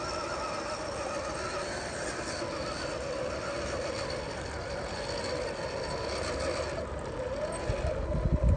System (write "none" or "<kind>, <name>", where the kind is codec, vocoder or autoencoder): none